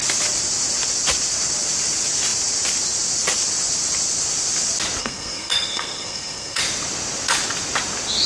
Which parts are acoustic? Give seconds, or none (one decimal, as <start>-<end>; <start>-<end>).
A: 0.0-5.0; 6.6-8.3